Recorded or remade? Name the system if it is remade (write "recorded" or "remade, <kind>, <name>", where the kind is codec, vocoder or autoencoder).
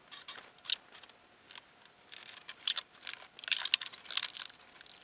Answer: recorded